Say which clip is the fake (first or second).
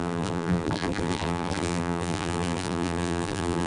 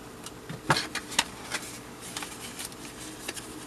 first